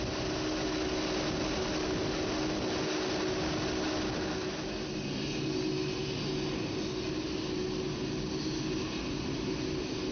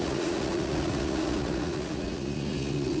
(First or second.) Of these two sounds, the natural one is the first